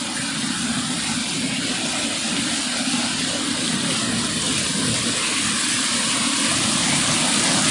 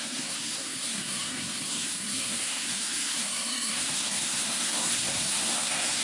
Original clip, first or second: first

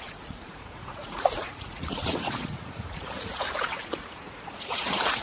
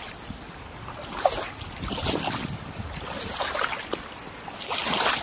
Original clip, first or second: second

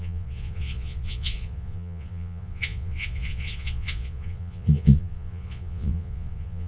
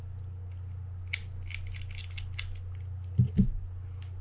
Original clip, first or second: second